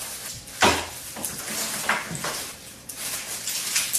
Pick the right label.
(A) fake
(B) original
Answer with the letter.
B